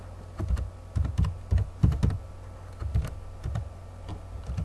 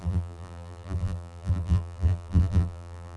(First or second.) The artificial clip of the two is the second